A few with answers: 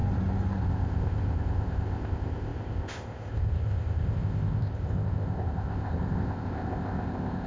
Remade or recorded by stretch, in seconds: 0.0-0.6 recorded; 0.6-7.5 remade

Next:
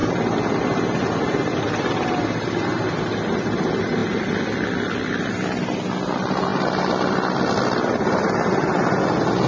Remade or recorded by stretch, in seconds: 0.0-9.5 recorded

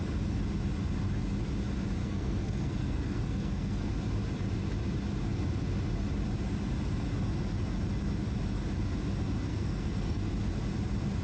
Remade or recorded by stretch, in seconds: 0.0-2.0 recorded; 2.0-3.9 remade; 3.9-9.5 recorded; 9.5-10.3 remade; 10.3-11.2 recorded

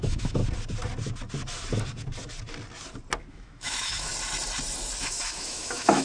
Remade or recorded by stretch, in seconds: 0.0-0.4 remade; 0.4-3.3 recorded; 3.3-4.1 remade; 4.1-5.0 recorded; 5.0-6.0 remade

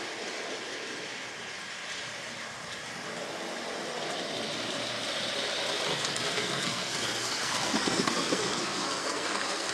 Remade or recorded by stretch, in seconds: 0.0-5.9 recorded; 5.9-9.7 remade

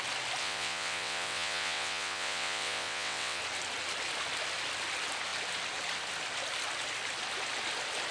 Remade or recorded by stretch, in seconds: 0.0-0.4 recorded; 0.4-3.4 remade; 3.4-8.1 recorded